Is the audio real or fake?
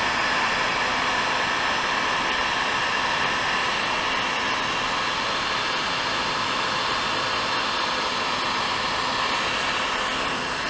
real